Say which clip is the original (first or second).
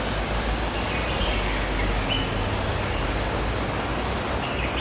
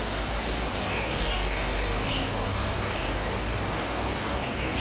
first